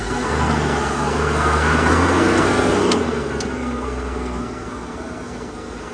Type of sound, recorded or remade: remade